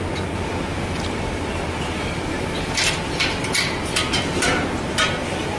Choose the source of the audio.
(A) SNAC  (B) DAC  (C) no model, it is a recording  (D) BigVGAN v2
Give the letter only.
C